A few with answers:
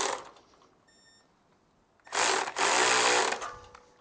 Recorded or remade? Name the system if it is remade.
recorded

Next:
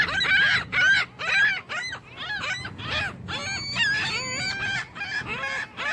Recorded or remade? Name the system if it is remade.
recorded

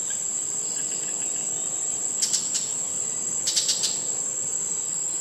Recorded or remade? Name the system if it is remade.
recorded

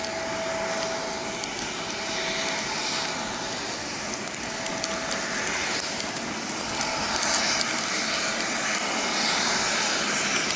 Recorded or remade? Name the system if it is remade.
recorded